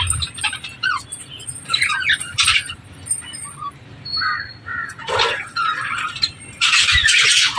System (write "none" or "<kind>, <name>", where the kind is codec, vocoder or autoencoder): vocoder, BigVGAN v2